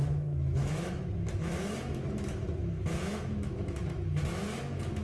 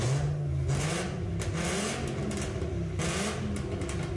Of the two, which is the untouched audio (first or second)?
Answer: second